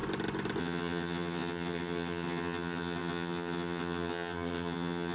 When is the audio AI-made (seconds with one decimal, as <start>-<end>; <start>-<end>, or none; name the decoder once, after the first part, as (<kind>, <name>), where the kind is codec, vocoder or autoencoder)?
0.6-5.1 (vocoder, HiFi-GAN)